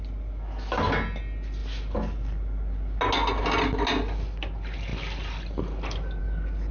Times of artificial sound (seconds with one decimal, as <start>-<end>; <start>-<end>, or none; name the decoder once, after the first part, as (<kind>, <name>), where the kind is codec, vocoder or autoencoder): none